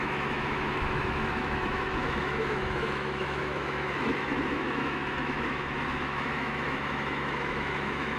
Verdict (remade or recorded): remade